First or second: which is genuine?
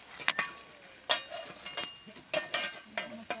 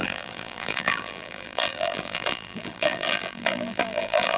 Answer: first